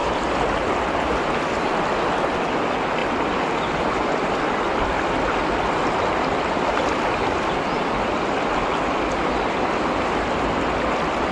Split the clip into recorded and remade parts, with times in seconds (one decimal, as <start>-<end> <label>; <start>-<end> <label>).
0.0-11.3 recorded